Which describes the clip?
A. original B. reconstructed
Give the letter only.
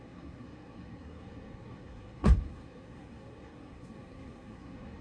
B